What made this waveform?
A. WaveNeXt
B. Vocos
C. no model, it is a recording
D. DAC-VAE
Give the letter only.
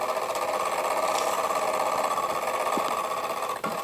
C